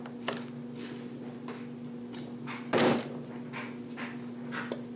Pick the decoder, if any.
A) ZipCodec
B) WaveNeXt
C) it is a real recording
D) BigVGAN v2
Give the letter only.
C